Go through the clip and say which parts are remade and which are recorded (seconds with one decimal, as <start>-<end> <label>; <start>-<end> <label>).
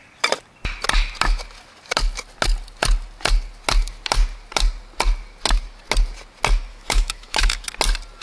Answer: 0.0-6.7 recorded; 6.7-7.7 remade; 7.7-8.2 recorded